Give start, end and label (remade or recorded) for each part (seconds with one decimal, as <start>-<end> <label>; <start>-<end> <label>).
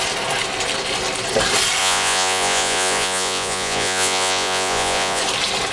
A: 0.0-1.8 recorded; 1.8-5.2 remade; 5.2-5.7 recorded